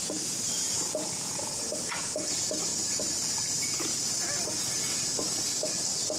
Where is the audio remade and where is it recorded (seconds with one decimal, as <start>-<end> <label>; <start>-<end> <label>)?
0.0-2.7 remade; 2.7-3.5 recorded; 3.5-3.9 remade; 3.9-5.4 recorded; 5.4-6.2 remade